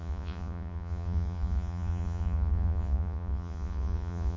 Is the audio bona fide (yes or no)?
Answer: no